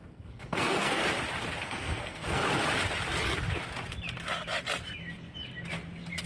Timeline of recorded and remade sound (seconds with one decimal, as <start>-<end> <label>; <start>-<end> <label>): 0.0-1.0 remade; 1.0-1.6 recorded; 1.6-2.4 remade; 2.4-6.3 recorded